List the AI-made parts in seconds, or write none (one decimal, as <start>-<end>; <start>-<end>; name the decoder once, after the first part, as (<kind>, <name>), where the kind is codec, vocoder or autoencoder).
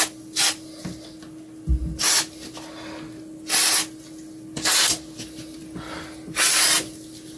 none